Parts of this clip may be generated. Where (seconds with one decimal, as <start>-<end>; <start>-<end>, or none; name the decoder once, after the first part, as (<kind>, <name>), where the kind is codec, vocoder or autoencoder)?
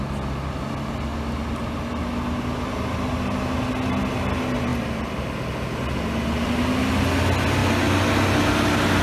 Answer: none